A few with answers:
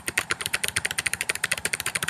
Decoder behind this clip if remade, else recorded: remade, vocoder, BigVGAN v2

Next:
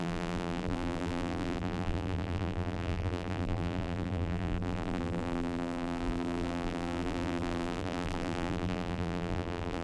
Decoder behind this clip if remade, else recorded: remade, vocoder, BigVGAN v2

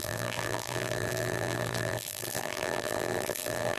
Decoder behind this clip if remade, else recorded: remade, vocoder, BigVGAN v2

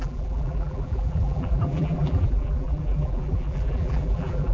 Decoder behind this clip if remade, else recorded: remade, vocoder, BigVGAN v2